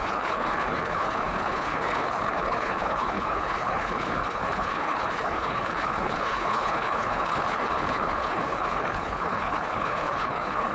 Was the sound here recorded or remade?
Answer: remade